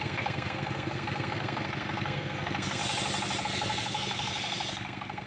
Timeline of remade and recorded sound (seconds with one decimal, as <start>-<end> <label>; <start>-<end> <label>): 0.0-2.8 remade; 2.8-3.4 recorded; 3.4-5.3 remade